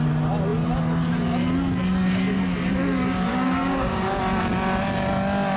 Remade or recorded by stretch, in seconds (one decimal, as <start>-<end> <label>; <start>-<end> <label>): 0.0-3.3 recorded; 3.3-4.2 remade; 4.2-5.6 recorded